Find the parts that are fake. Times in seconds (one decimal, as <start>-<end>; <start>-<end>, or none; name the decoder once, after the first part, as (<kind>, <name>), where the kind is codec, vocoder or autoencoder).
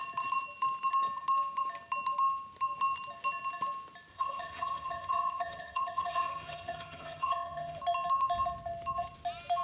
4.1-7.8 (vocoder, HiFi-GAN)